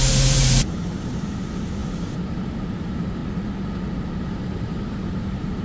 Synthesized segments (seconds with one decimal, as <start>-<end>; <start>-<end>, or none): 0.0-3.2; 4.3-5.6